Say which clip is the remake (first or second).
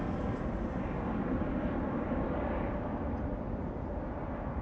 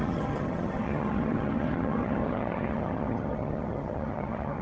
second